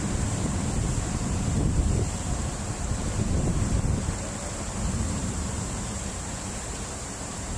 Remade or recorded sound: remade